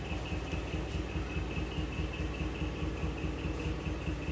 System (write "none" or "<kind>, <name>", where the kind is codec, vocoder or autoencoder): none